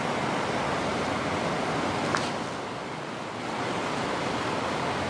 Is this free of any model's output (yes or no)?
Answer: yes